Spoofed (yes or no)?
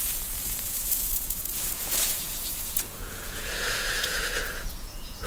yes